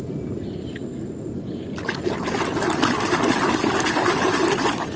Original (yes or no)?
yes